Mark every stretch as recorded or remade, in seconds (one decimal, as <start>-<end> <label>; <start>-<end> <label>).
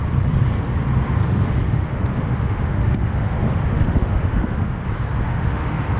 0.0-1.2 recorded; 1.2-4.8 remade; 4.8-5.3 recorded; 5.3-6.0 remade